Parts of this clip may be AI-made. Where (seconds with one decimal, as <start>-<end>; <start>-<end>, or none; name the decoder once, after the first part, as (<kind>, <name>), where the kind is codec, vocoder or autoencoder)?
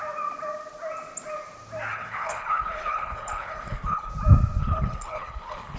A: 1.9-4.1 (codec, HILCodec); 4.6-5.8